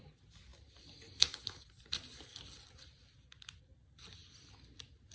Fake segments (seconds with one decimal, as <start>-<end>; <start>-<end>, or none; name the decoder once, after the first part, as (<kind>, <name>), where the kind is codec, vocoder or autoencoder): none